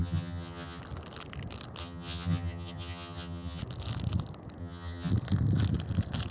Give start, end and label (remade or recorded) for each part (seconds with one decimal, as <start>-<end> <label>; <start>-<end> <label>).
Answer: 0.0-0.8 remade; 0.8-1.8 recorded; 1.8-3.6 remade; 3.6-4.6 recorded; 4.6-5.1 remade; 5.1-6.3 recorded